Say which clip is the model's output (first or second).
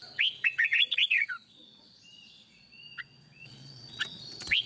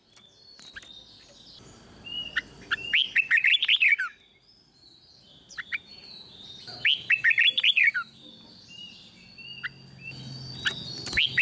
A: first